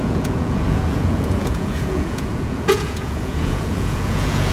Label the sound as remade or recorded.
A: remade